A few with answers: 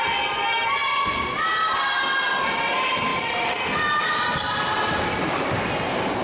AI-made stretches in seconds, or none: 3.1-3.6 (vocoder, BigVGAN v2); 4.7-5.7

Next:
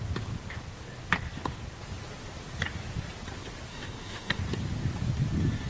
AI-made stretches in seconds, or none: 3.7-4.4 (codec, DAC)

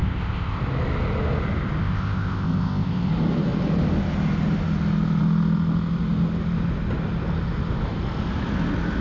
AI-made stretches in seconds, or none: 0.0-0.6 (codec, ZipCodec); 1.8-3.1